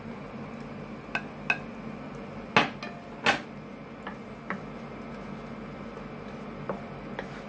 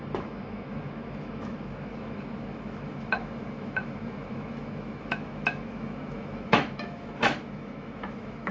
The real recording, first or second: first